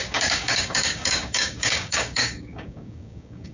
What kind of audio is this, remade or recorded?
remade